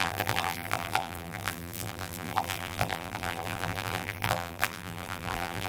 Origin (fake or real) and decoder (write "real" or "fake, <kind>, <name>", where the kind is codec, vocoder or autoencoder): fake, vocoder, BigVGAN v2